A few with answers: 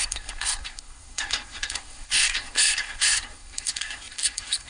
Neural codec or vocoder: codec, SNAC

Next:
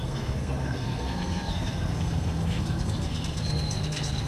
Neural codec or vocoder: codec, SNAC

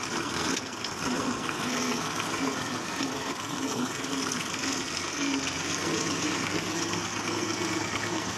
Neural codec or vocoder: codec, SNAC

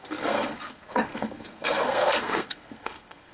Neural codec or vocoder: codec, SNAC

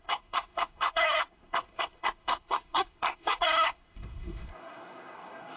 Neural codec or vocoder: codec, SNAC